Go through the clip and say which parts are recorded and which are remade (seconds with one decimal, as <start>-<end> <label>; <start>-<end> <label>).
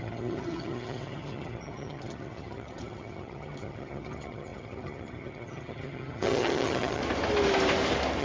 0.0-7.0 remade; 7.0-8.2 recorded